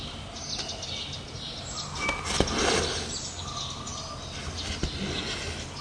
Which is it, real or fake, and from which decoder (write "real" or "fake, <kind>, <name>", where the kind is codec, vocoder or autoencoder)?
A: real